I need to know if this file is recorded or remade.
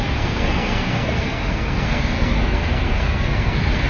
remade